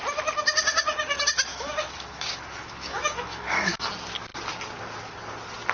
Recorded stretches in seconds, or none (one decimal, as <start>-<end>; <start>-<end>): 0.0-1.5; 3.9-5.7